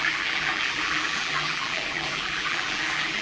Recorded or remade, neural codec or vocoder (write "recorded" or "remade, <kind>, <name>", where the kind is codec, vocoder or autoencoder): remade, vocoder, BigVGAN v2